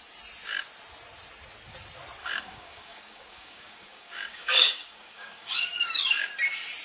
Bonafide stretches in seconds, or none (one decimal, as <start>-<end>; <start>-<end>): 0.0-2.2; 6.3-6.8